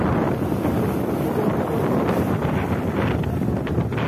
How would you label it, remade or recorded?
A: recorded